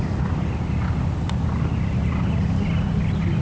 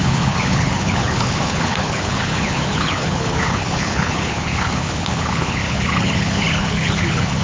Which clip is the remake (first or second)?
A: second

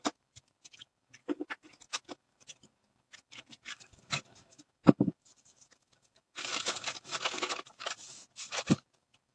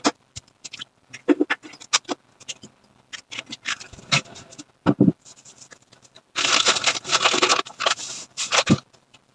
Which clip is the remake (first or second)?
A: first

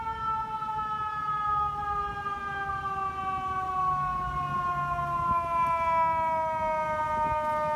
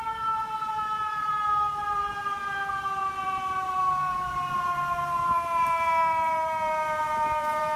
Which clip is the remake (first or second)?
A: second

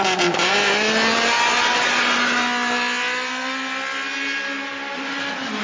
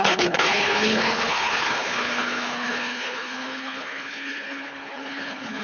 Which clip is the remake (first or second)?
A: second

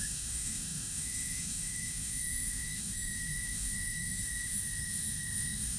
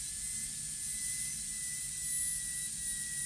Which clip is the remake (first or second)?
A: first